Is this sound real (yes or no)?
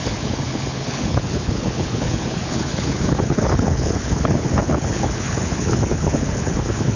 no